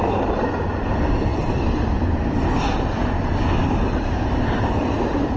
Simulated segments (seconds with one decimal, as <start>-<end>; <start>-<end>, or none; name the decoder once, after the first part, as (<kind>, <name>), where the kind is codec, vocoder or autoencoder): none